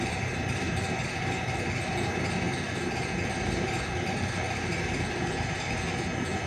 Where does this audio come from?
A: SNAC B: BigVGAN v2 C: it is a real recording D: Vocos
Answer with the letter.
B